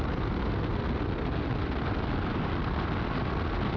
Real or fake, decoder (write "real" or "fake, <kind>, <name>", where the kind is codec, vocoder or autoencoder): real